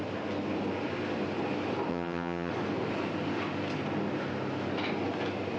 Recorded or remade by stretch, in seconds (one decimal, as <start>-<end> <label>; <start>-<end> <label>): 0.0-1.9 recorded; 1.9-2.5 remade; 2.5-5.6 recorded